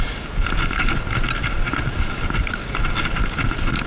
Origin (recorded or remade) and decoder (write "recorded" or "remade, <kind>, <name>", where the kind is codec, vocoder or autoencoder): recorded